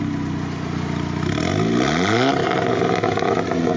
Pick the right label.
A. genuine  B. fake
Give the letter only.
A